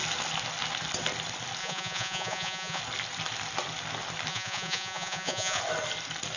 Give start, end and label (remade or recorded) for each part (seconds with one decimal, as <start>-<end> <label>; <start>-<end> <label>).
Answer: 0.0-1.6 recorded; 1.6-2.8 remade; 2.8-4.3 recorded; 4.3-5.6 remade; 5.6-6.4 recorded